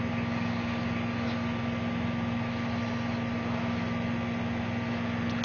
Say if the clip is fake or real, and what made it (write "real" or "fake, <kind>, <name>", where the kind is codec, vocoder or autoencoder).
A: real